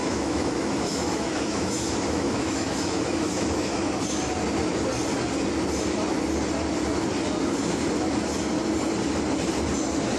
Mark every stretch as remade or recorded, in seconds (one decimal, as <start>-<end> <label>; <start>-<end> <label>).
0.0-3.9 remade; 3.9-10.2 recorded